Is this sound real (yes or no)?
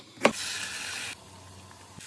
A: yes